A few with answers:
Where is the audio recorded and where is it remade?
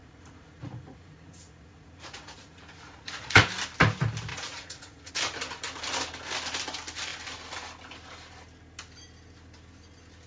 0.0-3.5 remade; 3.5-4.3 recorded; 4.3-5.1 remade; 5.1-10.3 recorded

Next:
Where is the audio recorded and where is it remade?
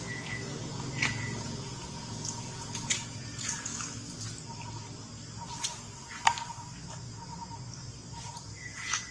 0.0-0.6 remade; 0.6-1.2 recorded; 1.2-3.7 remade; 3.7-8.3 recorded; 8.3-9.1 remade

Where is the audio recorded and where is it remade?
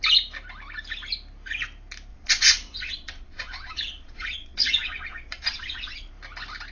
0.0-2.1 recorded; 2.1-6.1 remade; 6.1-6.7 recorded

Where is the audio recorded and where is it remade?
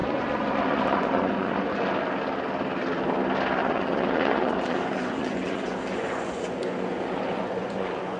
0.0-1.9 remade; 1.9-3.6 recorded; 3.6-8.2 remade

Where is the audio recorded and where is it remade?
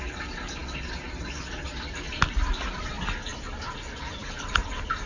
0.0-5.1 recorded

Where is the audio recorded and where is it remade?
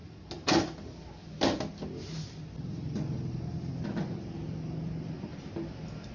0.0-6.1 recorded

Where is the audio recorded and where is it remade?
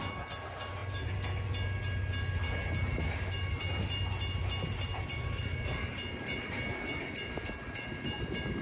0.0-8.6 recorded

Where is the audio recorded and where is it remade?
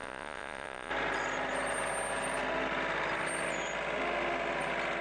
0.0-0.9 remade; 0.9-5.0 recorded